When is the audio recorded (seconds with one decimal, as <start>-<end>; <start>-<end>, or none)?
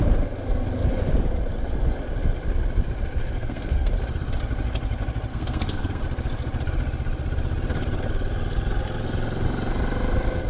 0.0-3.2; 3.9-5.3; 6.0-10.5